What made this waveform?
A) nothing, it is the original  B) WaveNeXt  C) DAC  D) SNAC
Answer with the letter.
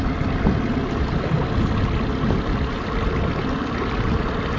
A